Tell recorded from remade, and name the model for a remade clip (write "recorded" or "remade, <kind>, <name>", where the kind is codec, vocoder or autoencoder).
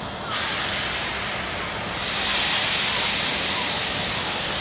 recorded